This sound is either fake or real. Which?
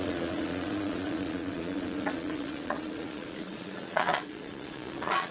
fake